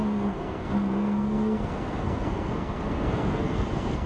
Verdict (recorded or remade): remade